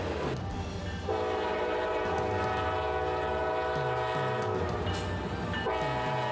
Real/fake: real